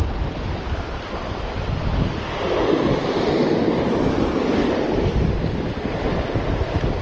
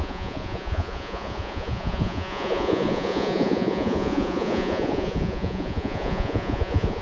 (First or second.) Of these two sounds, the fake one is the second